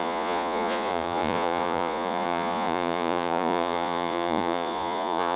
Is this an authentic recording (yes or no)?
no